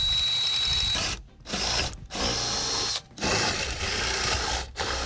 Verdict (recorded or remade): recorded